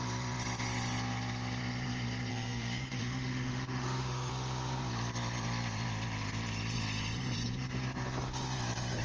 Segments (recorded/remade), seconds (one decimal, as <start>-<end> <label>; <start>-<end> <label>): 0.0-2.3 recorded; 2.3-4.3 remade; 4.3-9.0 recorded